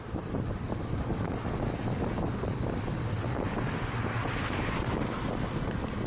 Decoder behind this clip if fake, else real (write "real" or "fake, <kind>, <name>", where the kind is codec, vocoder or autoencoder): real